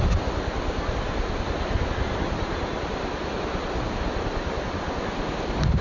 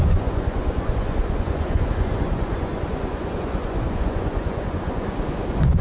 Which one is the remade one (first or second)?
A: second